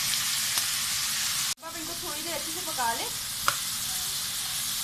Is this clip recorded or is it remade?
recorded